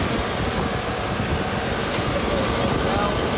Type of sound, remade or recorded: remade